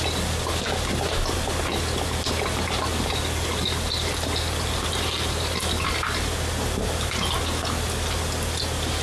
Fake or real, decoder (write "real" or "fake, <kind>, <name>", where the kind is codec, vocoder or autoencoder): real